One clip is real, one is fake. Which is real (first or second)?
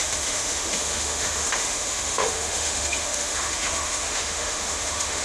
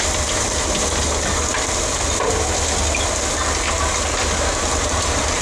second